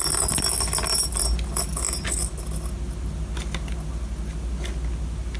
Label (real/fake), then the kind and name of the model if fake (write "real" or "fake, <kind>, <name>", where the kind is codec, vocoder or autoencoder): real